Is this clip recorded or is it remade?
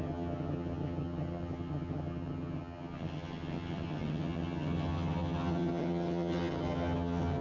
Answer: remade